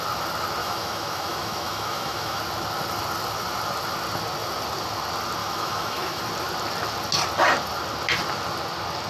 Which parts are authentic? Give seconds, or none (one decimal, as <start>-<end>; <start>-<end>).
0.0-0.6; 2.4-5.4; 6.2-9.1